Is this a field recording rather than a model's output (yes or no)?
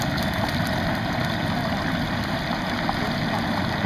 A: yes